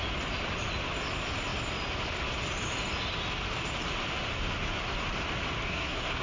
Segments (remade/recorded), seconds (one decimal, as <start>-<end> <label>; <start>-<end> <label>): 0.0-5.7 recorded; 5.7-6.2 remade